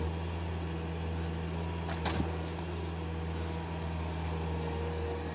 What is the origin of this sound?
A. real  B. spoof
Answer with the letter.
A